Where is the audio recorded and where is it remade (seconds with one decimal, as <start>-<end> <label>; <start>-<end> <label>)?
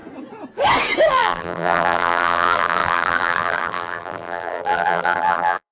0.0-1.1 recorded; 1.1-5.7 remade